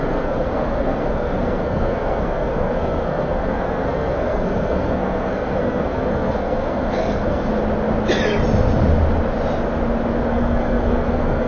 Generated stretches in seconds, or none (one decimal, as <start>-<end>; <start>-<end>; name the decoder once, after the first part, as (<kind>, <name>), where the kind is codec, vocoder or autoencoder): 0.0-7.5 (codec, SNAC); 10.3-11.5